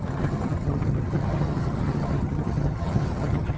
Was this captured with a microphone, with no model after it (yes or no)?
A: no